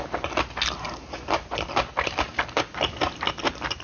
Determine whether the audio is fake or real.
real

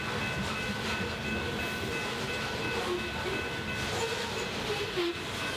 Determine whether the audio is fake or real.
real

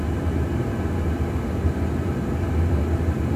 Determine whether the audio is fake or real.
real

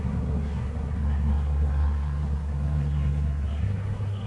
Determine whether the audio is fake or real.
fake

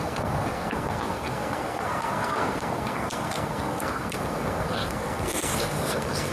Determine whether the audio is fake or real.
fake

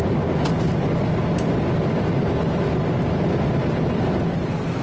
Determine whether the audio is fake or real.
real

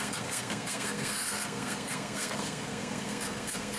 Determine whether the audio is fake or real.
fake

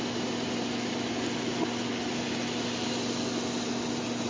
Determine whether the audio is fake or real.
real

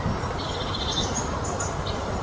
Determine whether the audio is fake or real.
real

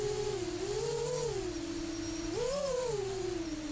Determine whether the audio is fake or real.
real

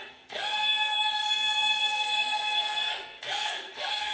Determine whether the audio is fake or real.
fake